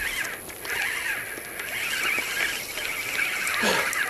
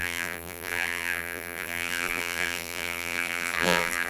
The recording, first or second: first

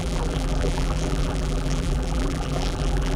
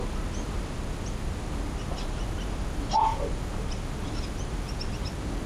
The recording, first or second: second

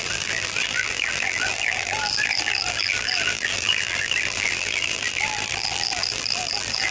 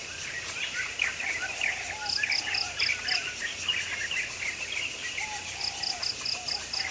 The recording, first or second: second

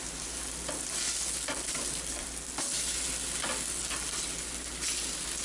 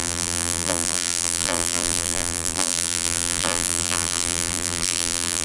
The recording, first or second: first